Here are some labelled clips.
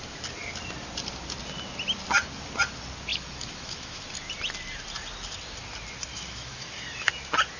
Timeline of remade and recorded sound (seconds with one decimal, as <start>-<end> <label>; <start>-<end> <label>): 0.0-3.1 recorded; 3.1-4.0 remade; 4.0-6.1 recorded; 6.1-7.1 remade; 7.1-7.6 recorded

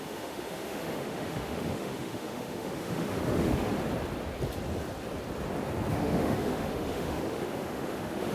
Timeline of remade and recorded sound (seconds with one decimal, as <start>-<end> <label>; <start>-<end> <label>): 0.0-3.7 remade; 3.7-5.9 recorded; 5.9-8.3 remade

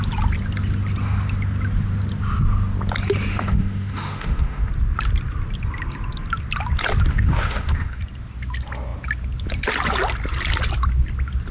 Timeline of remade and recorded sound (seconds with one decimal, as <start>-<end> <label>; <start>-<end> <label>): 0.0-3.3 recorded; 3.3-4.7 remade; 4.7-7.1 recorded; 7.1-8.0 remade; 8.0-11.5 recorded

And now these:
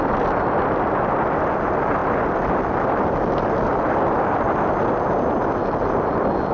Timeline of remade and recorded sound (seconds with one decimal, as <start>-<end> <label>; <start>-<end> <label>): 0.0-6.5 recorded